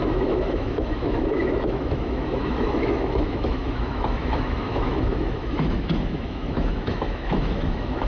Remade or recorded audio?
remade